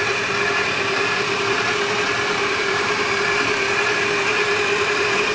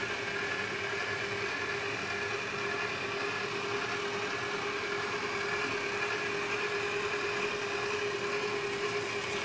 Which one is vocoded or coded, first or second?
first